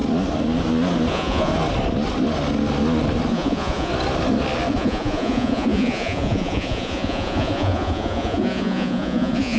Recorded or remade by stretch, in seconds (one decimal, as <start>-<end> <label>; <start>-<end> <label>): 0.0-1.1 recorded; 1.1-1.5 remade; 1.5-3.3 recorded; 3.3-3.9 remade; 3.9-4.7 recorded; 4.7-9.6 remade